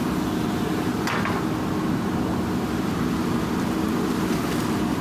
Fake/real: real